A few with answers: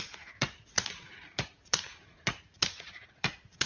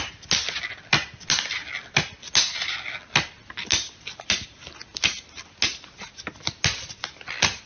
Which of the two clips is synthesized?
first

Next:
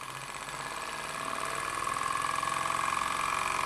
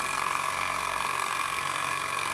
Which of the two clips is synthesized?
second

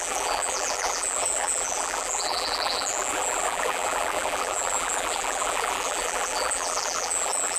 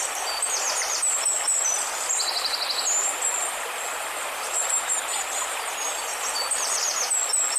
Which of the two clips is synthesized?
first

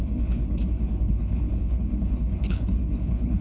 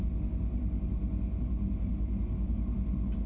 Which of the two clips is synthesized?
first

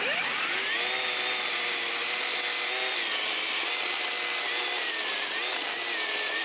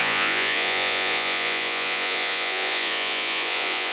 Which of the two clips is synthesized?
second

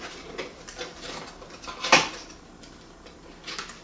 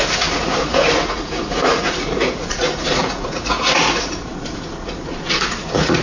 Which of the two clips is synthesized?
second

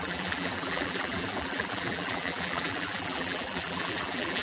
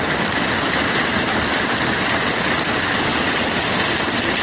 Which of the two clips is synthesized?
first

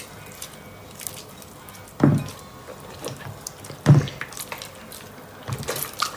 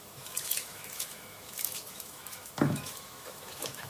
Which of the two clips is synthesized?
second